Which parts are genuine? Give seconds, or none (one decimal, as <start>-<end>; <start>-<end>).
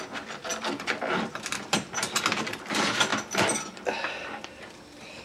3.1-4.7